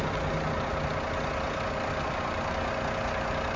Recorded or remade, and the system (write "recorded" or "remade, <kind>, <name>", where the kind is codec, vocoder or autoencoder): recorded